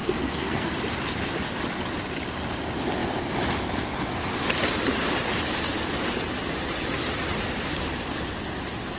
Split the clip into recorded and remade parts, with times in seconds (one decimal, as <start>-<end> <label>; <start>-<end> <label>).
0.0-0.7 remade; 0.7-9.0 recorded